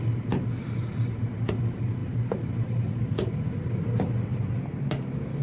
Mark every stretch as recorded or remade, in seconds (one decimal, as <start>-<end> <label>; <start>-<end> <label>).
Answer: 0.0-5.4 recorded